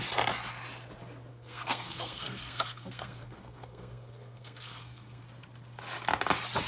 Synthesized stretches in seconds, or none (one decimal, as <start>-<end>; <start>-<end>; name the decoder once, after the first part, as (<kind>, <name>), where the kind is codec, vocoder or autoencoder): 1.3-5.2 (codec, SNAC)